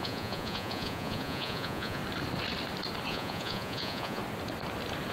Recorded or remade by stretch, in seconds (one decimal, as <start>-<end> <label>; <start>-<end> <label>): 0.0-2.0 remade; 2.0-3.1 recorded; 3.1-4.2 remade; 4.2-5.1 recorded